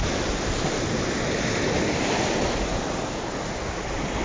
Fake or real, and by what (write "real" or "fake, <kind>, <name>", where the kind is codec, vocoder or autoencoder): real